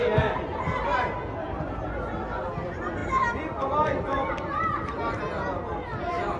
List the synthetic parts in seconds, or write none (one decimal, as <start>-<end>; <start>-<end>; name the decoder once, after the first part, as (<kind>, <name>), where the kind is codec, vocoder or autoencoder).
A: none